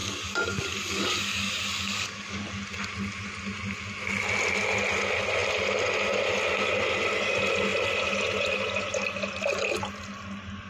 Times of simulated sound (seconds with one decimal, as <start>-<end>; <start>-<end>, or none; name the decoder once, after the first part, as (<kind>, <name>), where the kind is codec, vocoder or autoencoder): 0.0-2.4 (codec, DAC)